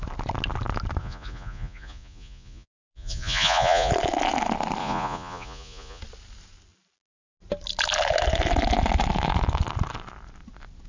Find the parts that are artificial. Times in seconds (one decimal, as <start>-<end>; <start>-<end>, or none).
1.0-3.9; 4.8-6.0